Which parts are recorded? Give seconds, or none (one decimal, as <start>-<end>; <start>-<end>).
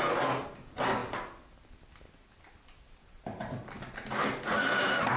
0.0-5.2